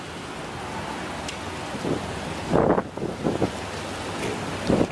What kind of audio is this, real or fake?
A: real